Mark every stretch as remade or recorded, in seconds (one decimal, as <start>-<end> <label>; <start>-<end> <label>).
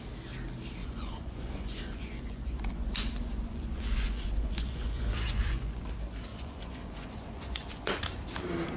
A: 0.0-0.8 recorded; 0.8-5.8 remade; 5.8-6.3 recorded; 6.3-8.0 remade; 8.0-8.8 recorded